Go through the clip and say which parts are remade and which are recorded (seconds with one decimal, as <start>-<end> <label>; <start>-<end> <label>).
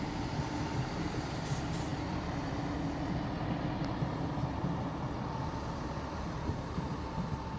0.0-7.6 recorded